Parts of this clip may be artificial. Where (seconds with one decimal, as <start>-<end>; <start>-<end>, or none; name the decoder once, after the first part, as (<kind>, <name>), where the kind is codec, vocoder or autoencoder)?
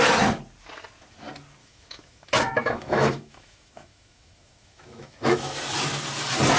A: 1.6-5.6 (autoencoder, DAC-VAE)